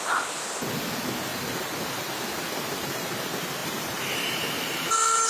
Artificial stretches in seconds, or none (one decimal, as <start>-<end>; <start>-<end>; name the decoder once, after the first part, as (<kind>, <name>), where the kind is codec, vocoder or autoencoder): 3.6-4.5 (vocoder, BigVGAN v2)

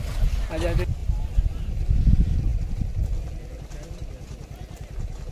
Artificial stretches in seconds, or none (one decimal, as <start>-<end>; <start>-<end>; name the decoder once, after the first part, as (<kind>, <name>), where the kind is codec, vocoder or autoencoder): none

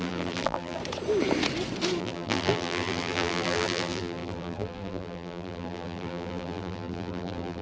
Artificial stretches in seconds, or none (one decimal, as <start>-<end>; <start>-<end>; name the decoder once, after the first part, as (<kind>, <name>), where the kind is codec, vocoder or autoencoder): 0.0-0.8 (vocoder, BigVGAN v2); 2.0-7.6

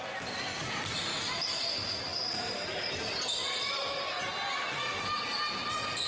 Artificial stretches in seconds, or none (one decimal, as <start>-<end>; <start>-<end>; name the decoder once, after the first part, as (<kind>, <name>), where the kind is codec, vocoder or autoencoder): 1.1-1.7 (vocoder, BigVGAN v2)